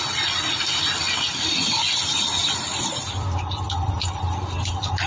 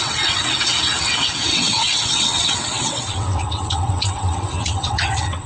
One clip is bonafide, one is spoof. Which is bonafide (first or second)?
first